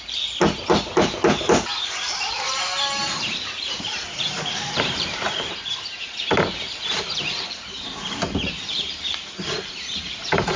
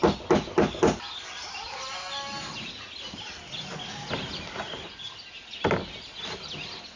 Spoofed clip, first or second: first